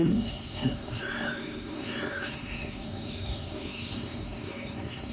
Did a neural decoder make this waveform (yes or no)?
yes